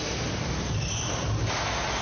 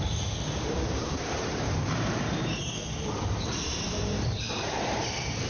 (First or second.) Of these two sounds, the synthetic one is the second